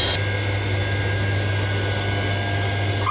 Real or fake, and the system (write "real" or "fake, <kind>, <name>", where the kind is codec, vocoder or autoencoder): real